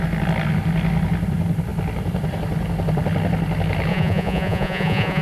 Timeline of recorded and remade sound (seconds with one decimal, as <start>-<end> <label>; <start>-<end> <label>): 0.0-3.9 recorded; 3.9-5.2 remade